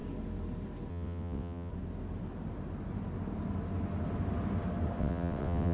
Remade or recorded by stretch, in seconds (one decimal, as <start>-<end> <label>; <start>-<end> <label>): 0.0-0.9 recorded; 0.9-1.7 remade; 1.7-5.0 recorded; 5.0-5.7 remade